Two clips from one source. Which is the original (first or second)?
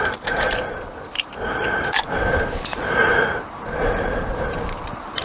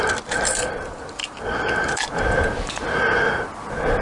second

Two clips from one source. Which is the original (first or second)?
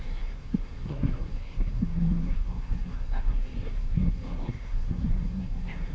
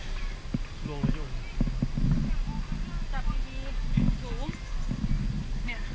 second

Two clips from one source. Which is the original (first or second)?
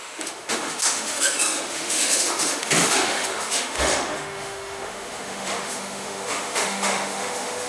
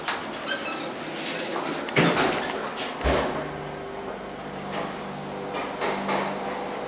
second